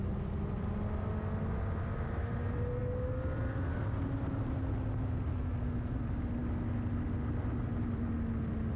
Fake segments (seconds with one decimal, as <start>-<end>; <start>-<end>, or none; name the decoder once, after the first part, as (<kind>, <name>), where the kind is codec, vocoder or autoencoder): none

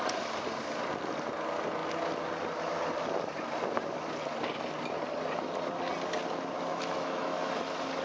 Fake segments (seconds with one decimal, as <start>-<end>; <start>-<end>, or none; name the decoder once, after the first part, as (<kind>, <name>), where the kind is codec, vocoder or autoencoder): 6.7-7.5 (autoencoder, DAC-VAE)

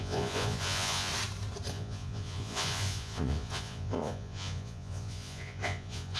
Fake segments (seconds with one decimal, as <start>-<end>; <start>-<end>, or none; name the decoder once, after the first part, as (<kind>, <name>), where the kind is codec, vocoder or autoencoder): 0.0-1.1 (vocoder, Vocos); 1.7-6.2

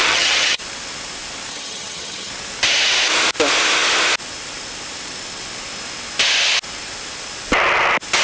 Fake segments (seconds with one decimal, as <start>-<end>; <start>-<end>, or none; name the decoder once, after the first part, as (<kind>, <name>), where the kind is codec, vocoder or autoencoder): 0.0-0.6 (vocoder, HiFi-GAN); 1.5-2.3